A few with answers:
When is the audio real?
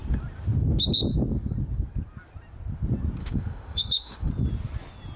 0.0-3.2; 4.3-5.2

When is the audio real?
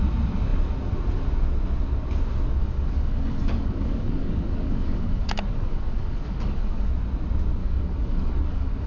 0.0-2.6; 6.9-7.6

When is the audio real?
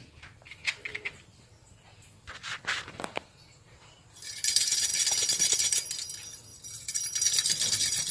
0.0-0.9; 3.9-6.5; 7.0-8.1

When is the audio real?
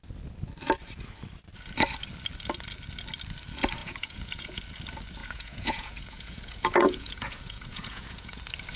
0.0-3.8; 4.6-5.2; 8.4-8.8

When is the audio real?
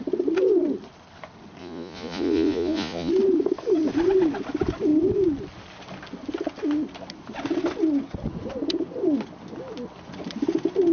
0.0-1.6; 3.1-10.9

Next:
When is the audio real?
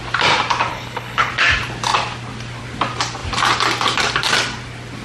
0.0-0.7; 1.3-5.0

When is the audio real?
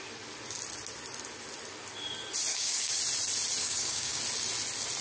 0.0-2.5; 3.0-3.6; 4.2-5.0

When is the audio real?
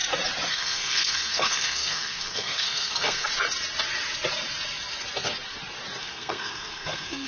0.0-0.5; 3.3-6.0